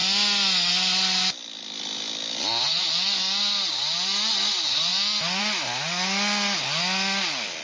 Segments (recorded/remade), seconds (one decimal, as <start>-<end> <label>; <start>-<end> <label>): 0.0-7.6 recorded